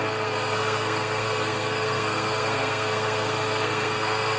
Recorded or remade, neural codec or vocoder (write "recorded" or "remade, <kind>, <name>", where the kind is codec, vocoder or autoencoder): remade, codec, SNAC